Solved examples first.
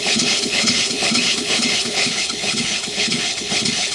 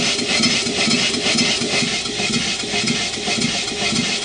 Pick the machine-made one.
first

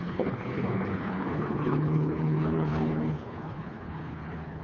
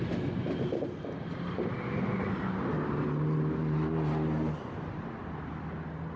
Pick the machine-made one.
first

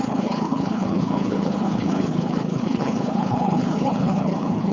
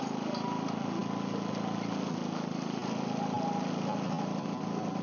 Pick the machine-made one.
first